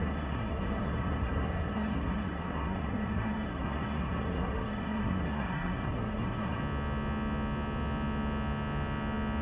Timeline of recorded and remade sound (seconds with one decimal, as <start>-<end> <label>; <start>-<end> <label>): 0.0-6.6 remade; 6.6-9.4 recorded